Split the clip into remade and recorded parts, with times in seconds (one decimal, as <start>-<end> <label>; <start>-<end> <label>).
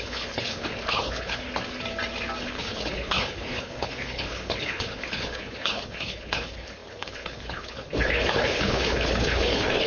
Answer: 0.0-1.5 remade; 1.5-2.4 recorded; 2.4-9.9 remade